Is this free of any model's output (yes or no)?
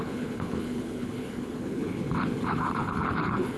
no